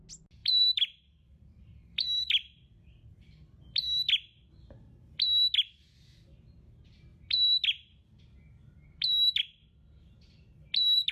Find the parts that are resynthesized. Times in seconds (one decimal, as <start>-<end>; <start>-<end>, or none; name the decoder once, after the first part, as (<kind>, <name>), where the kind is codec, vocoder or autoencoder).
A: 0.4-3.6 (vocoder, BigVGAN v2)